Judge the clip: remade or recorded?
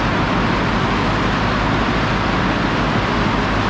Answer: recorded